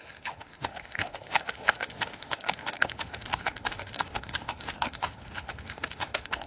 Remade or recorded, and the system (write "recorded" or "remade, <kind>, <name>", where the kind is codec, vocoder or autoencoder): remade, autoencoder, DAC-VAE